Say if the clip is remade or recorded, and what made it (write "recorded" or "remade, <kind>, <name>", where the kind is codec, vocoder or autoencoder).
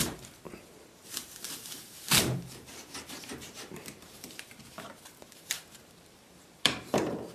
remade, vocoder, BigVGAN v2